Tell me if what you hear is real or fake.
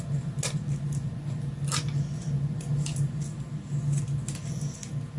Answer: real